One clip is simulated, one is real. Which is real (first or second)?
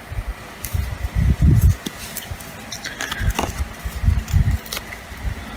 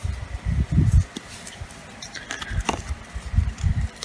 first